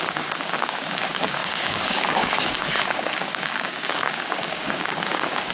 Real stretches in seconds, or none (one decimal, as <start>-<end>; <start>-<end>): none